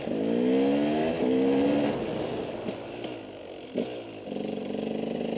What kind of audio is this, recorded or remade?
recorded